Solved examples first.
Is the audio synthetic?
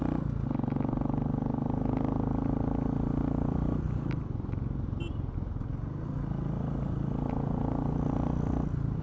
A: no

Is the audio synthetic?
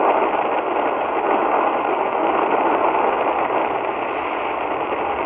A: no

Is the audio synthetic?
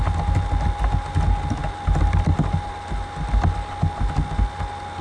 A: no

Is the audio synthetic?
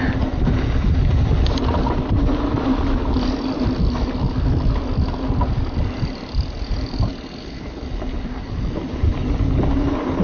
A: no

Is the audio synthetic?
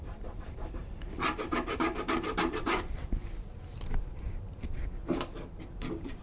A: yes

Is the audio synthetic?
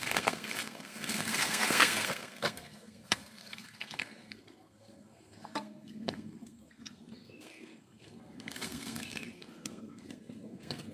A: yes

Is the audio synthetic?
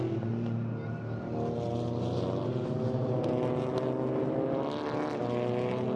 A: no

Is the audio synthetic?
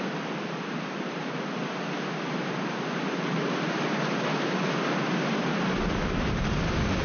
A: no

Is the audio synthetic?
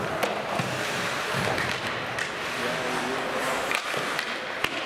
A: no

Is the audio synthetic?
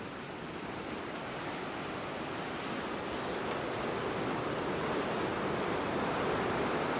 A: no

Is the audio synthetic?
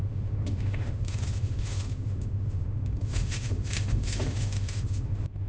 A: yes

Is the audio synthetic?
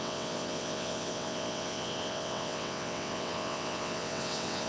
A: yes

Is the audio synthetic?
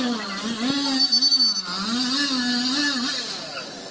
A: no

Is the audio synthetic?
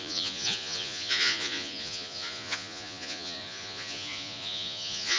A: yes